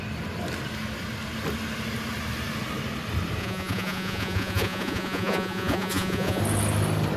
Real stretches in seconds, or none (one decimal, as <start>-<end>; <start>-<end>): 0.0-3.4; 6.4-7.2